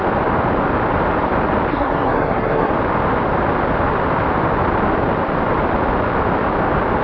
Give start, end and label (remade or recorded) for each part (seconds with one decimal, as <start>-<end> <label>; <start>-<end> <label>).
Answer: 0.0-1.7 recorded; 1.7-2.7 remade; 2.7-7.0 recorded